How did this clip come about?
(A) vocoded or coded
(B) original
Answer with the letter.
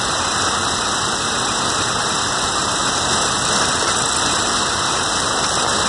B